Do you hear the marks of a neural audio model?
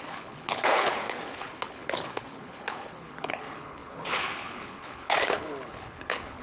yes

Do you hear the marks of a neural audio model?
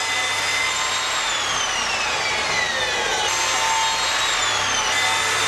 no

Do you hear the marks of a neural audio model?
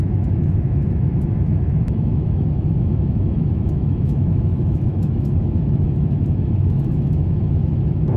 yes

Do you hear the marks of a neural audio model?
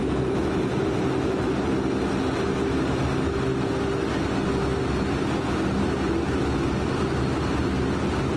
no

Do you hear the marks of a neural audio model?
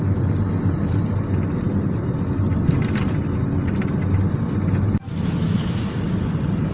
no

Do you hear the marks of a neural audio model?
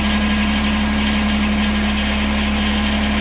no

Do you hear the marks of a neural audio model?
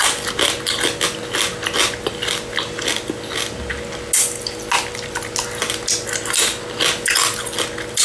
no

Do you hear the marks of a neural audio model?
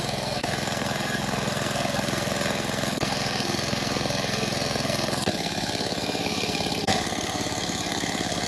yes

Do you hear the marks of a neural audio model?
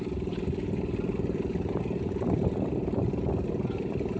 no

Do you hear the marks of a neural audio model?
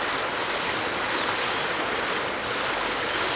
no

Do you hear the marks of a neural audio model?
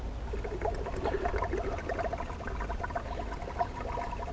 no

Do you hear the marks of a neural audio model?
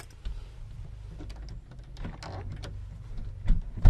no